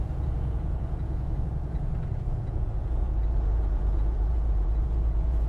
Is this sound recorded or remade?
remade